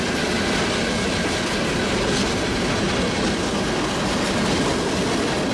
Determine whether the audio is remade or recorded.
recorded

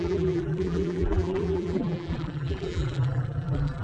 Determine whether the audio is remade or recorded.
remade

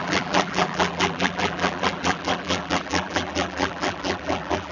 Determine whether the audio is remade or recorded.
remade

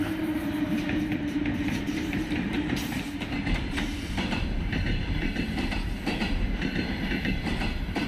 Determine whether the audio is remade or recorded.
remade